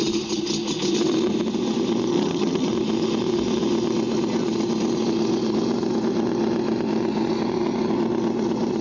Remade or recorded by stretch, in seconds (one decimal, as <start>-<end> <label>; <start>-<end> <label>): 0.0-2.1 recorded; 2.1-2.7 remade; 2.7-8.8 recorded